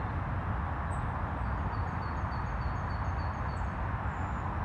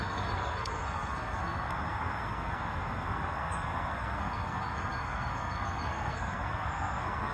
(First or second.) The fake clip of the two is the second